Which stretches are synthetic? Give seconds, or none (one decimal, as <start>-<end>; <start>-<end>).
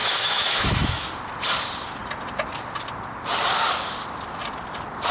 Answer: 0.0-1.1